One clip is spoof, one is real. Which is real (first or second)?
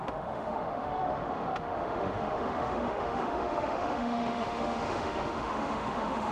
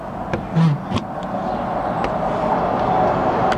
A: second